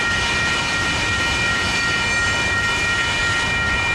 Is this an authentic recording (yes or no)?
no